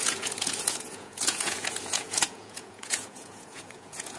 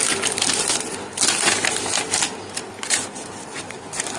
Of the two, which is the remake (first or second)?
first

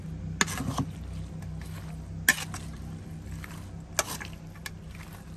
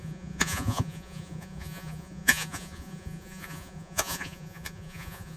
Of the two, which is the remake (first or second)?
second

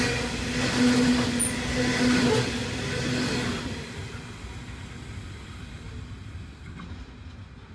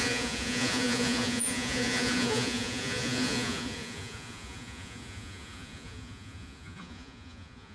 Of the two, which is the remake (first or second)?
second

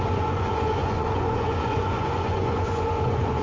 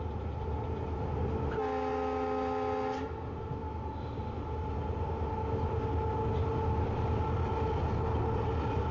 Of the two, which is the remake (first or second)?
first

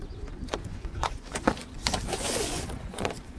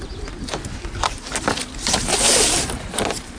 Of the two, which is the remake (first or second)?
first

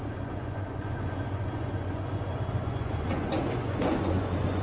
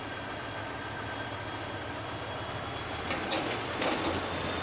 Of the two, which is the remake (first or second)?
first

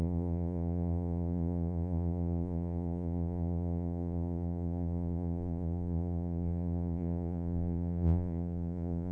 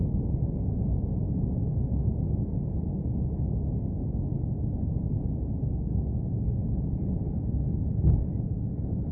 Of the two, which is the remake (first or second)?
first